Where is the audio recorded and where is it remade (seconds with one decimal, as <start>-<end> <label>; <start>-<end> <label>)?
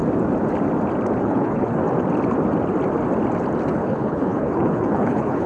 0.0-1.2 recorded; 1.2-1.8 remade; 1.8-3.7 recorded; 3.7-5.5 remade